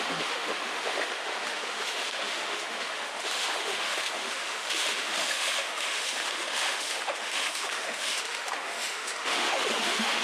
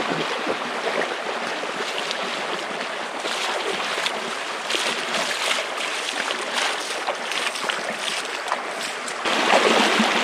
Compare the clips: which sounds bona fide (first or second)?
second